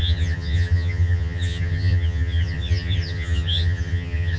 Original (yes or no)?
no